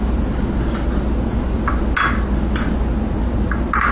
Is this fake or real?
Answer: real